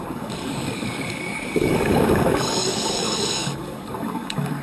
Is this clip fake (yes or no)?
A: yes